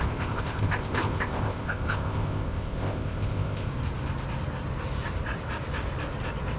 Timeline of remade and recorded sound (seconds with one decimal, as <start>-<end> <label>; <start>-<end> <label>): 0.0-3.7 remade; 3.7-6.6 recorded